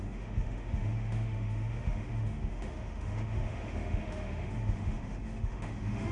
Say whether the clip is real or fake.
fake